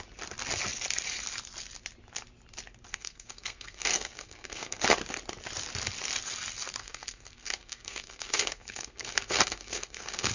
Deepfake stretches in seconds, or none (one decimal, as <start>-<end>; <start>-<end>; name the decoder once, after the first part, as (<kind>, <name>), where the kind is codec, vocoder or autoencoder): 2.9-4.8 (codec, SNAC); 6.8-10.3